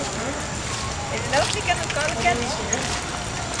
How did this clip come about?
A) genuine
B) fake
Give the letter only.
A